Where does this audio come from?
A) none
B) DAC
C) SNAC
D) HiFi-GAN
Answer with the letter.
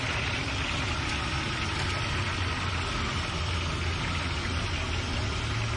A